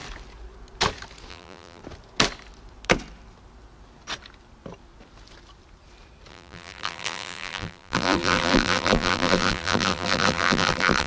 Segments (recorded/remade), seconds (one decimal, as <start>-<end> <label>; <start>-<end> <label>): 0.0-1.3 recorded; 1.3-1.8 remade; 1.8-6.3 recorded; 6.3-11.1 remade